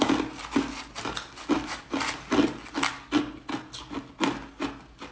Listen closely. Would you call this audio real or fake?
real